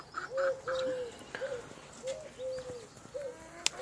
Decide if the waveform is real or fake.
real